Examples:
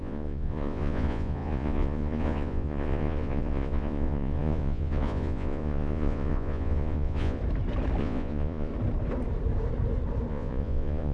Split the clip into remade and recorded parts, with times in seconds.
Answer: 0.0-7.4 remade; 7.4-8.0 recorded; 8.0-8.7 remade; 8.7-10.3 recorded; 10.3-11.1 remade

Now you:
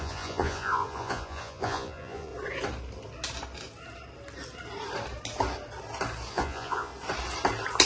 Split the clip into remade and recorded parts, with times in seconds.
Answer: 0.0-2.3 remade; 2.3-6.3 recorded; 6.3-6.9 remade; 6.9-7.9 recorded